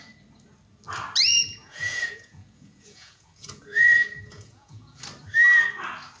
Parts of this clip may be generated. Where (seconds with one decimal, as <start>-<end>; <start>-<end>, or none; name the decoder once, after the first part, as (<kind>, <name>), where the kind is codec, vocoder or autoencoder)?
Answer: 1.3-5.0 (vocoder, Vocos)